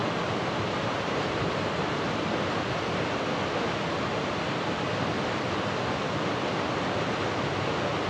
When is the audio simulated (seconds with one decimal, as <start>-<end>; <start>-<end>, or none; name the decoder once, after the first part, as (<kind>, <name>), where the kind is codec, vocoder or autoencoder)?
0.0-1.5 (vocoder, BigVGAN v2)